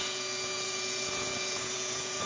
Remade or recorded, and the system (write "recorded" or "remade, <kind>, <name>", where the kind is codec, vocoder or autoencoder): remade, vocoder, Vocos